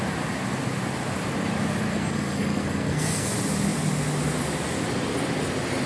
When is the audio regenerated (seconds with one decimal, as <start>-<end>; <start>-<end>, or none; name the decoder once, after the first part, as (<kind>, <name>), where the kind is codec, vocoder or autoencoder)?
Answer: 1.9-3.3 (codec, SNAC)